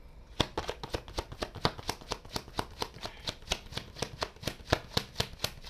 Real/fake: real